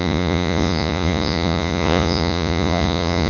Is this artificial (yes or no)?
yes